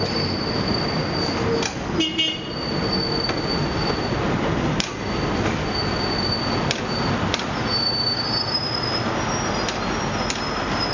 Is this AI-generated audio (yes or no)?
no